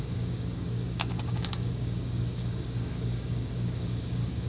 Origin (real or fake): fake